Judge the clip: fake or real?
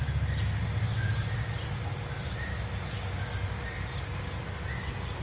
real